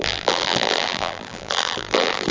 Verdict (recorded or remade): remade